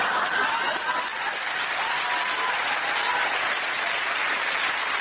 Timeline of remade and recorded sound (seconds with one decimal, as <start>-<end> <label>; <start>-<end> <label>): 0.0-5.0 recorded

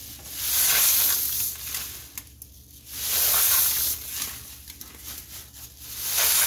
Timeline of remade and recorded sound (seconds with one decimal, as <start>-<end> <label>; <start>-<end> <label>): 0.0-6.5 recorded

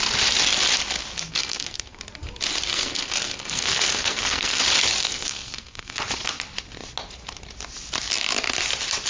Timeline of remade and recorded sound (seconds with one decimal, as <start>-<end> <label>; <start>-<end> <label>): 0.0-1.3 recorded; 1.3-2.0 remade; 2.0-2.7 recorded; 2.7-4.6 remade; 4.6-5.0 recorded; 5.0-6.0 remade; 6.0-9.1 recorded

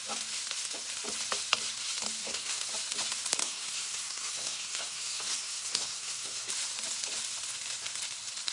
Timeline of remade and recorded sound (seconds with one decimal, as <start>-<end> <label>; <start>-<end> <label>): 0.0-2.2 recorded; 2.2-2.7 remade; 2.7-3.4 recorded; 3.4-6.5 remade; 6.5-8.5 recorded

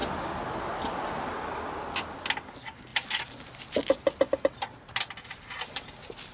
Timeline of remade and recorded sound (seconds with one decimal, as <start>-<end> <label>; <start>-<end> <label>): 0.0-6.3 recorded